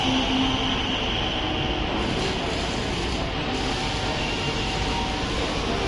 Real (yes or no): yes